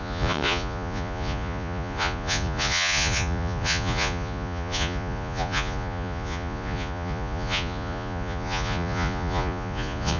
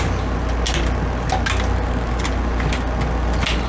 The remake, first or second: first